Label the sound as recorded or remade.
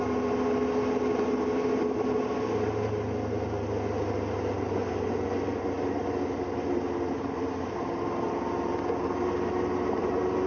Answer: recorded